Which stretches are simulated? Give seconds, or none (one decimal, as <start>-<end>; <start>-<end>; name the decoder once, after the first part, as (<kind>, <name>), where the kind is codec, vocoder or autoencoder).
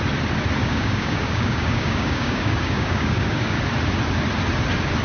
0.6-3.6 (codec, DAC)